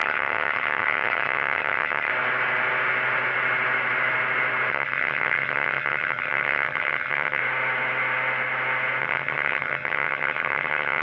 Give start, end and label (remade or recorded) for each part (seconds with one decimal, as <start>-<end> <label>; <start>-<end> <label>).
0.0-2.1 remade; 2.1-4.7 recorded; 4.7-7.4 remade; 7.4-9.0 recorded; 9.0-11.0 remade